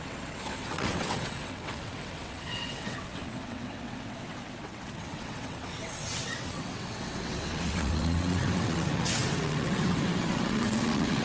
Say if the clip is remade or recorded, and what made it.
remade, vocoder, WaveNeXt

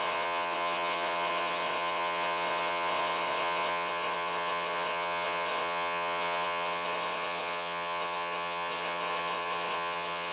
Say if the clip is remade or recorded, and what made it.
remade, vocoder, WaveNeXt